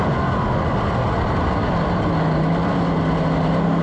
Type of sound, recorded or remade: recorded